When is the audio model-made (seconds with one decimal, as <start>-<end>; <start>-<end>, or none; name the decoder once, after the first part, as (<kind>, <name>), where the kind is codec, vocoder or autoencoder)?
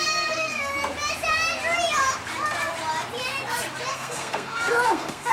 0.0-0.7 (codec, SNAC); 3.9-5.3